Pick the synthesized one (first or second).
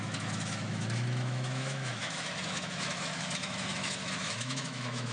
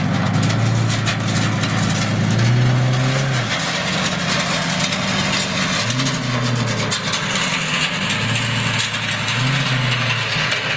first